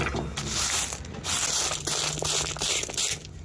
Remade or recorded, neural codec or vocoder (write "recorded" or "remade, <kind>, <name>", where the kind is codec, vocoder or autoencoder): recorded